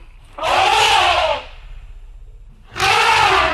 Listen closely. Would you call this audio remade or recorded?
recorded